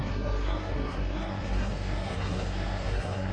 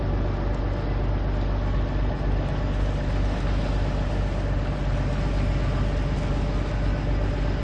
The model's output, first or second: first